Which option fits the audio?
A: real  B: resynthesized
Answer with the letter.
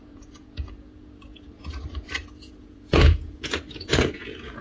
B